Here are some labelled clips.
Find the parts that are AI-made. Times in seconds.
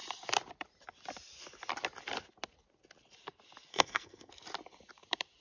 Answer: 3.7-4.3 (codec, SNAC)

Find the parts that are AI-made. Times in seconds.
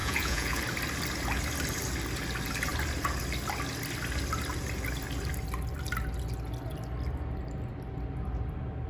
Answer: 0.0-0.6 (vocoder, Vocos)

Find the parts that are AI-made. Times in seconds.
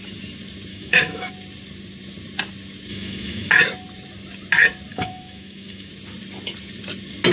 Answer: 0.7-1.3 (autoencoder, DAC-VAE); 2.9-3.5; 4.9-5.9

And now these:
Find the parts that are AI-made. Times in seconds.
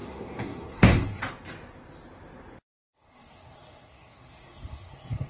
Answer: 0.0-1.2 (codec, SNAC); 2.9-5.3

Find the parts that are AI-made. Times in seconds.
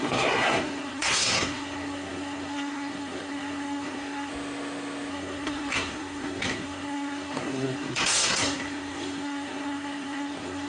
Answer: 0.0-4.3 (codec, SNAC); 5.1-10.7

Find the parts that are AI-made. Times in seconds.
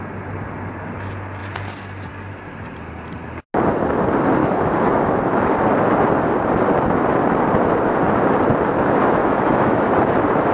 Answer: 4.4-5.4 (autoencoder, DAC-VAE); 9.2-9.9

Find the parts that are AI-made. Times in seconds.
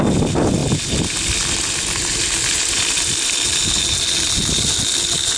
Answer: none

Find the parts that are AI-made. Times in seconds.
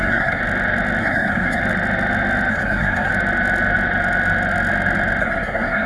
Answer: 0.0-0.4 (codec, SNAC); 1.0-1.6; 2.5-3.1; 5.2-5.9